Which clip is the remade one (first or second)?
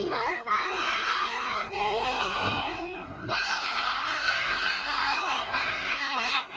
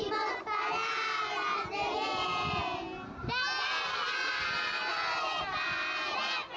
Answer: first